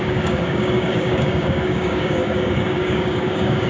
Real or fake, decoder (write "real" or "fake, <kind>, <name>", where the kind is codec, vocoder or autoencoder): fake, codec, DAC